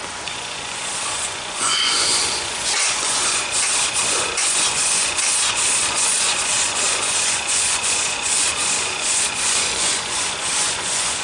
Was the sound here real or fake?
fake